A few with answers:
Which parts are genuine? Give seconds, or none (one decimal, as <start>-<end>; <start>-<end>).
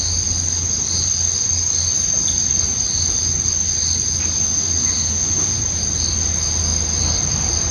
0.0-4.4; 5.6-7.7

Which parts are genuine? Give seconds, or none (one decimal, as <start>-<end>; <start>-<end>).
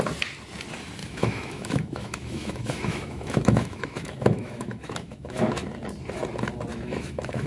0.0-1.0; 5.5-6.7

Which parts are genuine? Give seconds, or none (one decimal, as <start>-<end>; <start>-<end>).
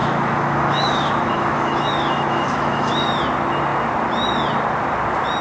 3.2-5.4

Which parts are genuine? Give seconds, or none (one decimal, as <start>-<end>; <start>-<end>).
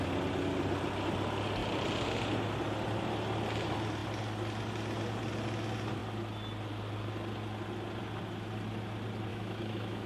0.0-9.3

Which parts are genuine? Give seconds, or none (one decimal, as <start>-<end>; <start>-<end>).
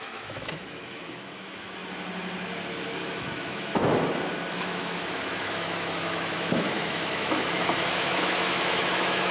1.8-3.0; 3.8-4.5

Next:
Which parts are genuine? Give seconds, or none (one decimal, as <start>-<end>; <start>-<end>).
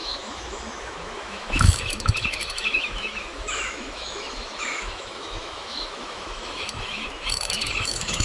none